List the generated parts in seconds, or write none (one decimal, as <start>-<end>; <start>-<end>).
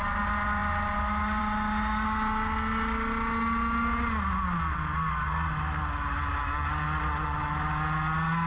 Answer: none